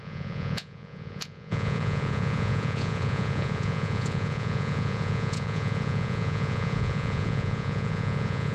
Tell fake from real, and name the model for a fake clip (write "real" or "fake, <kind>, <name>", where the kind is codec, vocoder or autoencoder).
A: fake, vocoder, Vocos